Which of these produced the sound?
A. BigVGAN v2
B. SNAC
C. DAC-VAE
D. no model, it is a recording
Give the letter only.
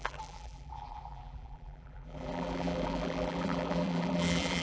A